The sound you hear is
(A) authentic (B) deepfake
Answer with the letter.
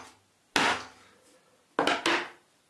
A